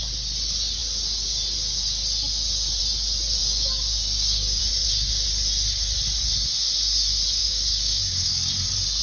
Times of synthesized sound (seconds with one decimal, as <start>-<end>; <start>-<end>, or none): 3.4-4.6; 7.4-8.5